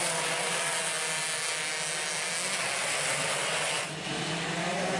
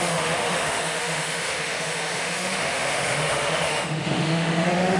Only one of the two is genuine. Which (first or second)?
first